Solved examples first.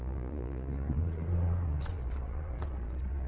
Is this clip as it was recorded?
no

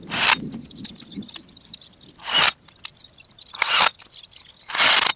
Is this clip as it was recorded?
yes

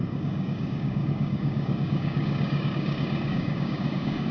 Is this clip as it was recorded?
no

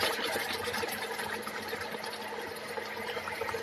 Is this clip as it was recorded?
yes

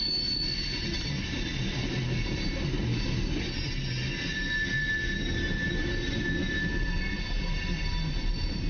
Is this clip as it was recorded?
yes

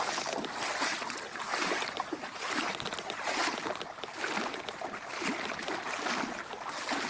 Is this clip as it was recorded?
yes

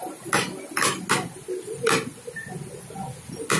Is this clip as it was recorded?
yes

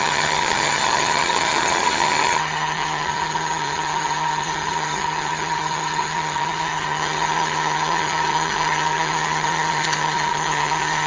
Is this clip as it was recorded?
no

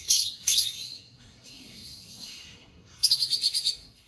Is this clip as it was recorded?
no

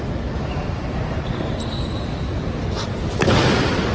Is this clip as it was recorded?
yes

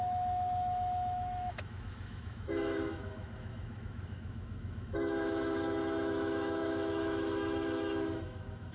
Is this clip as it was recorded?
no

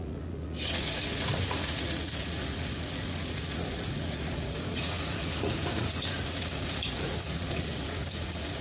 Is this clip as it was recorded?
no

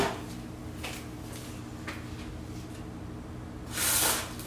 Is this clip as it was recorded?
yes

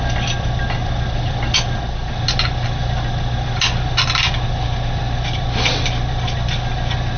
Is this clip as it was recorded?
yes